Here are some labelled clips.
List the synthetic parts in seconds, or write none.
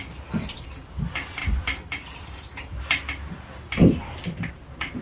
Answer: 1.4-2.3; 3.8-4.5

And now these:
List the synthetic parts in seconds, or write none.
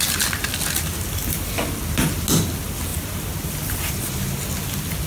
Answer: none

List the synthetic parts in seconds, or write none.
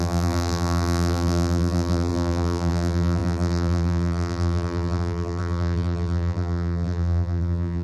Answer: 0.0-7.8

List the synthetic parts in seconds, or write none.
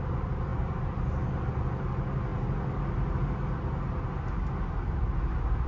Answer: 0.5-1.3